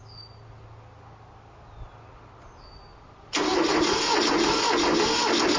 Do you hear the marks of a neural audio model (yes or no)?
no